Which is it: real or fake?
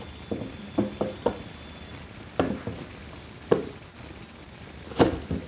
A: real